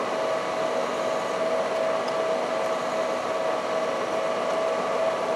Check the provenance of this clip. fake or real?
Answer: real